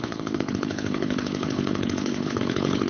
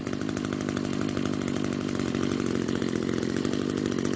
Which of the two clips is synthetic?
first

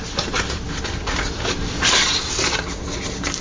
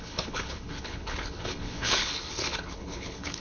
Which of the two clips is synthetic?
second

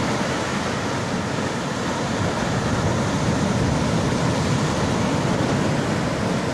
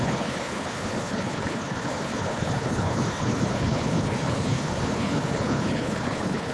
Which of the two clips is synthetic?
second